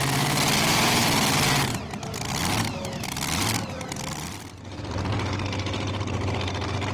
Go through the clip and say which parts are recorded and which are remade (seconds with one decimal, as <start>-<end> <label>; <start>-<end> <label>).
0.0-6.9 recorded